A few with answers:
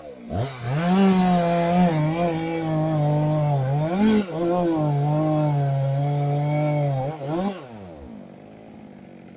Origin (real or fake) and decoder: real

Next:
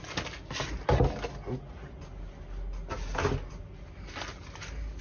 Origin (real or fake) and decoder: real